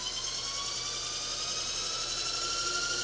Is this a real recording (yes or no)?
yes